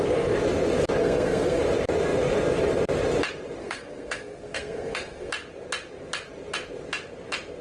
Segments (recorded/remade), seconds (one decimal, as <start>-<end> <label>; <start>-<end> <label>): 0.0-1.0 recorded; 1.0-1.6 remade; 1.6-3.6 recorded; 3.6-5.3 remade; 5.3-7.6 recorded